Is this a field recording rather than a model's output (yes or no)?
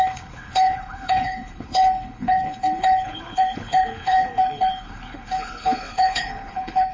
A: no